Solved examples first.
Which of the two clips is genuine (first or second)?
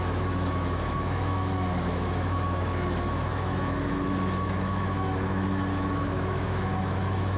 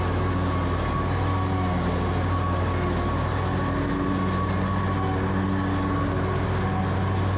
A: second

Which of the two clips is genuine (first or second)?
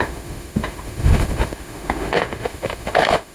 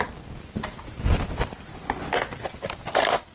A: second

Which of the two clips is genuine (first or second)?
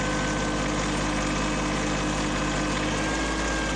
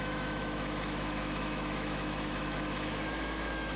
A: first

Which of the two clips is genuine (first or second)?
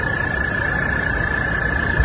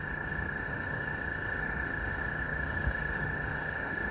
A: first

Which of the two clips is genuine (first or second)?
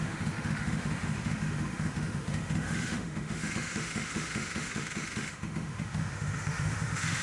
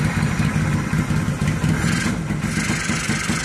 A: second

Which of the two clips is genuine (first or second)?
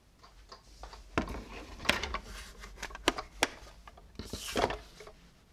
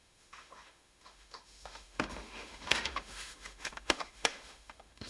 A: first